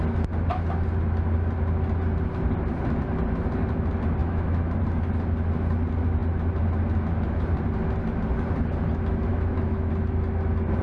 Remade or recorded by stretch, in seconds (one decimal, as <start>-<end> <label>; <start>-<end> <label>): 0.0-4.2 recorded; 4.2-4.8 remade; 4.8-9.3 recorded; 9.3-9.9 remade; 9.9-10.8 recorded